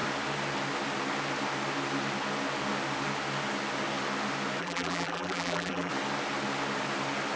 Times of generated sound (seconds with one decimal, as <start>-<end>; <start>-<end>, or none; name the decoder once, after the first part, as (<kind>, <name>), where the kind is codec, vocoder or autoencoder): 4.6-5.9 (vocoder, BigVGAN v2)